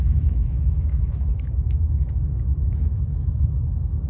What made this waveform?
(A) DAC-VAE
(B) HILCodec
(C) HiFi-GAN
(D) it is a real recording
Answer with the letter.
A